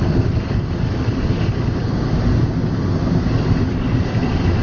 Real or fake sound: real